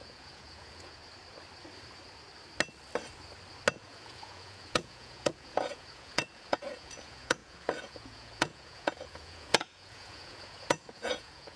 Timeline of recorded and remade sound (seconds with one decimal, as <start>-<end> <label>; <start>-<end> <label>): 0.0-1.0 remade; 1.0-3.7 recorded; 3.7-11.6 remade